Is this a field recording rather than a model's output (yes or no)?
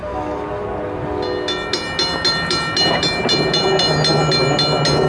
yes